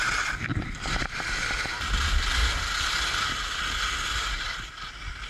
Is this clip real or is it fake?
real